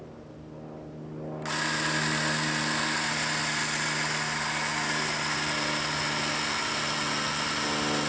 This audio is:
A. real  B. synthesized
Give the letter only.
A